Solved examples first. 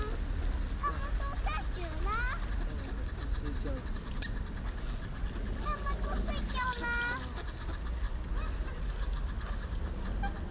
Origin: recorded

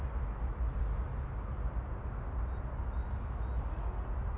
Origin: recorded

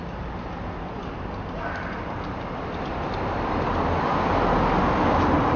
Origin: recorded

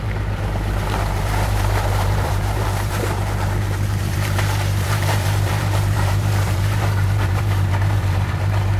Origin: remade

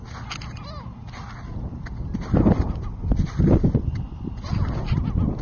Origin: recorded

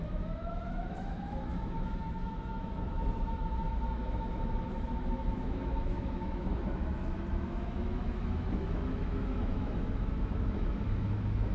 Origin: remade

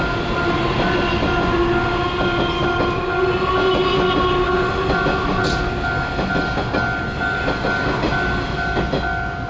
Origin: recorded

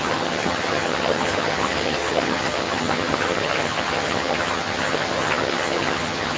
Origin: remade